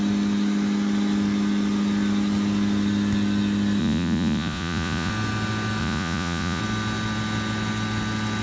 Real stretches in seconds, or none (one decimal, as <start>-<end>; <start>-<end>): 0.0-3.8; 5.1-5.8; 6.6-8.4